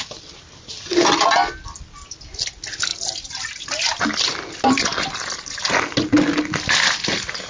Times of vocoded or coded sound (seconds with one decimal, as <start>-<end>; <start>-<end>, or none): none